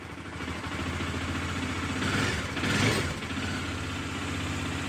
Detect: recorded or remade recorded